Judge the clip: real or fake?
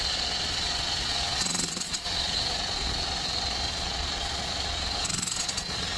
fake